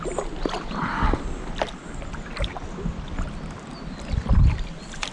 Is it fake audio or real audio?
real